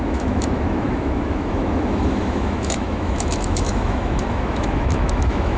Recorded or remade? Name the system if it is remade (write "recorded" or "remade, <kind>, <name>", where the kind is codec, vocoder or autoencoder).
remade, autoencoder, DAC-VAE